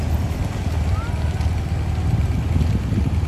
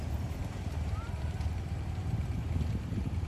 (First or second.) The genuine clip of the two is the first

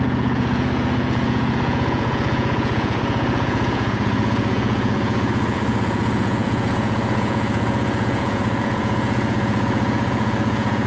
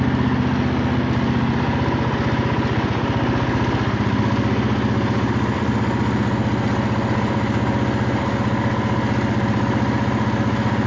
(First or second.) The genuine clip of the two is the second